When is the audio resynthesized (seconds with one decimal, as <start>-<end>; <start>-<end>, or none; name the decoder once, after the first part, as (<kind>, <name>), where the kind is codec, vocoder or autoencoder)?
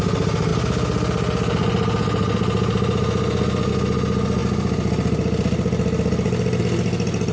none